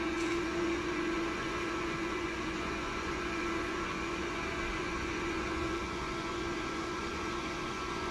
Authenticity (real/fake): fake